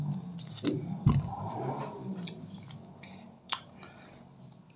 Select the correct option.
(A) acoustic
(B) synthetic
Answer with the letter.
A